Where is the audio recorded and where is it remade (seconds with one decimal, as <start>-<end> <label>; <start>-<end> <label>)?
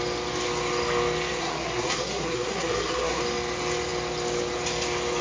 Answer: 0.0-1.4 recorded; 1.4-3.2 remade; 3.2-5.2 recorded